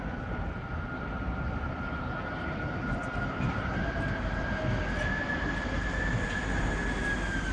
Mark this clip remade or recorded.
recorded